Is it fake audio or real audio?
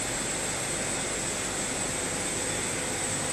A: real